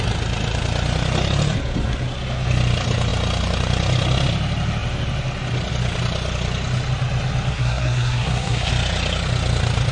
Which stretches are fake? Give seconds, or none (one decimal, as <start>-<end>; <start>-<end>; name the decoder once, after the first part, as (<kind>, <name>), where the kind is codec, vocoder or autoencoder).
7.5-8.7 (codec, SNAC)